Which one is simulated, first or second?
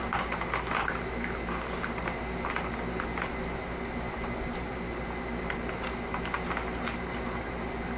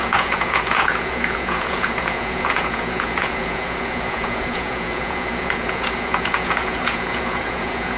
second